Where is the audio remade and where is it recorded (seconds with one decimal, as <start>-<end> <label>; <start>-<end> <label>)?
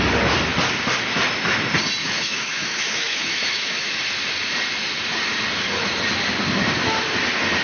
0.0-2.0 recorded; 2.0-4.0 remade; 4.0-7.6 recorded